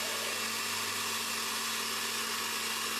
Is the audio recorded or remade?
recorded